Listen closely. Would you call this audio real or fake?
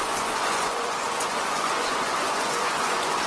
fake